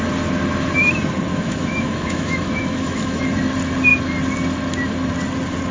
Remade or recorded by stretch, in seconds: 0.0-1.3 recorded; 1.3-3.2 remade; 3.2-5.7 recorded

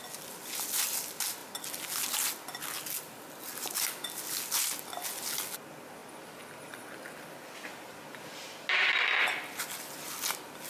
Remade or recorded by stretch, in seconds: 0.0-10.7 recorded

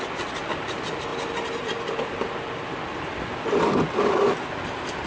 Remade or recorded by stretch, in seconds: 0.0-5.1 recorded

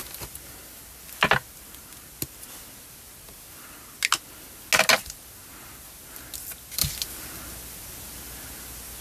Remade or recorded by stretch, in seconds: 0.0-9.0 recorded

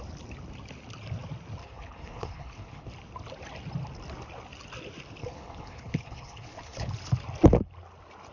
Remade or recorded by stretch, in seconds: 0.0-1.6 recorded; 1.6-2.9 remade; 2.9-5.2 recorded; 5.2-6.9 remade; 6.9-8.3 recorded

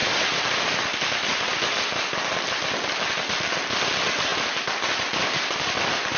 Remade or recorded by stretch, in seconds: 0.0-6.2 recorded

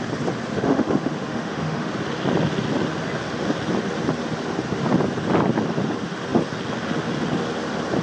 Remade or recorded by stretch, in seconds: 0.0-0.5 recorded; 0.5-1.9 remade; 1.9-8.0 recorded